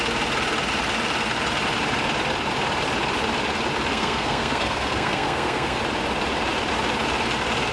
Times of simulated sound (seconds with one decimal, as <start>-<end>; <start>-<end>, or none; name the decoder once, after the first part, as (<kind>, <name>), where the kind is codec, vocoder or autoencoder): 3.9-5.8 (codec, SNAC)